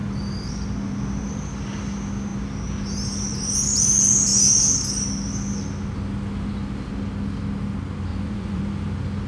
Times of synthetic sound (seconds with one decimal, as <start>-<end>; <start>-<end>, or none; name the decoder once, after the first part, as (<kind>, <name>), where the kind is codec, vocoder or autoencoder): 8.1-8.6 (vocoder, Vocos)